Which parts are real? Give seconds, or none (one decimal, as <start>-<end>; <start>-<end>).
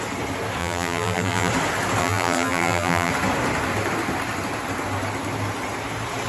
0.0-0.6; 1.5-2.0; 3.1-6.3